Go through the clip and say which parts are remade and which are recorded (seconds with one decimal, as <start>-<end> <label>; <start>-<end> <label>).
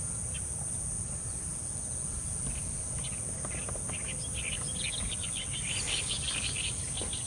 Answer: 0.0-7.3 recorded